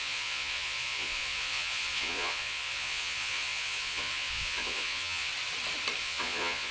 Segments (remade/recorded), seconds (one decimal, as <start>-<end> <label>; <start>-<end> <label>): 0.0-5.3 remade; 5.3-6.0 recorded; 6.0-6.7 remade